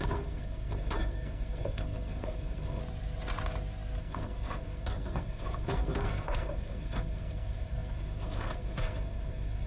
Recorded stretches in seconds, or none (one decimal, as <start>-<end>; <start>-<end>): 2.8-4.0